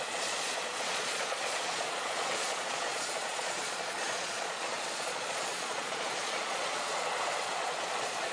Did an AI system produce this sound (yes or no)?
yes